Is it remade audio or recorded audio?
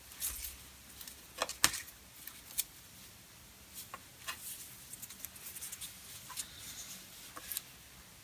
recorded